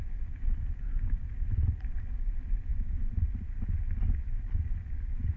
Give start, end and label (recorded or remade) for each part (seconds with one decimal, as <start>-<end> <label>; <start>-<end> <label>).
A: 0.0-5.4 recorded